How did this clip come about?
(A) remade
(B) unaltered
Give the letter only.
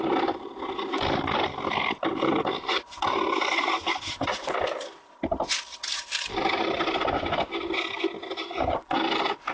B